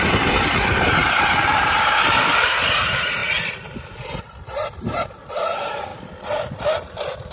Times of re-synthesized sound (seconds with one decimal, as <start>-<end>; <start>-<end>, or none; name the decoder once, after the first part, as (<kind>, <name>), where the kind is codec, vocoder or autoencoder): 0.0-1.0 (vocoder, BigVGAN v2); 1.7-3.2; 4.2-5.9; 6.8-7.3